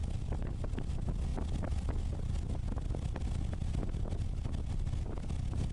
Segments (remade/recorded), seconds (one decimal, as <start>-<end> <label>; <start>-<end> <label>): 0.0-5.7 recorded